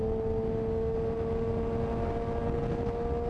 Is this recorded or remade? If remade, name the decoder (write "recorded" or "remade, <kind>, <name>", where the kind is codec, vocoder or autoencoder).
recorded